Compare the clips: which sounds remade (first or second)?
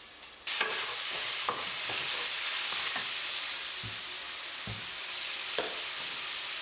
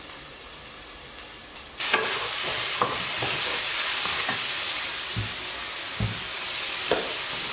second